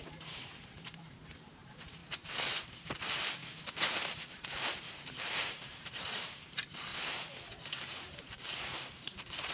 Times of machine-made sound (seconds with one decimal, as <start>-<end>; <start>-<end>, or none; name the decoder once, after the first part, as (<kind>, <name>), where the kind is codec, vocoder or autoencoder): 0.0-2.0 (vocoder, BigVGAN v2); 3.0-3.4; 4.1-6.9; 7.7-9.5